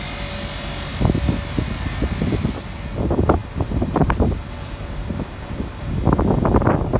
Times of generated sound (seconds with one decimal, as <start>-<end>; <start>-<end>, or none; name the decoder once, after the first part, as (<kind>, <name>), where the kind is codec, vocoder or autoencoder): 3.4-5.9 (vocoder, BigVGAN v2)